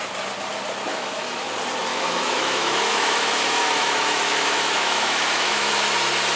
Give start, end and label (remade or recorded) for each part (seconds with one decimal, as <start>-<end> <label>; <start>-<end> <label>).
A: 0.0-0.9 recorded; 0.9-1.5 remade; 1.5-1.9 recorded; 1.9-5.7 remade; 5.7-6.4 recorded